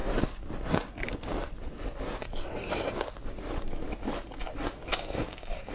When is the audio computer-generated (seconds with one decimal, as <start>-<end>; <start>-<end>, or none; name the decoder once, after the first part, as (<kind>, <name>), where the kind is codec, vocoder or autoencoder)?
4.9-5.7 (codec, DAC)